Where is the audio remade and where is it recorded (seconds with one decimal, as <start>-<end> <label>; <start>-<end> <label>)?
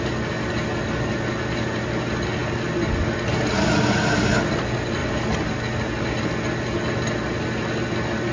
0.0-8.3 recorded